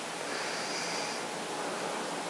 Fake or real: real